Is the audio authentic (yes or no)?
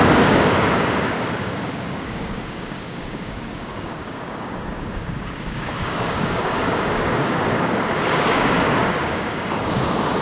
no